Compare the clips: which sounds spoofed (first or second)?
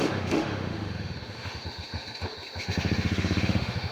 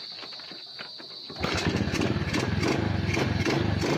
first